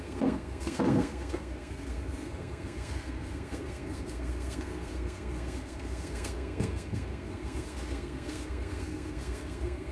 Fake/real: fake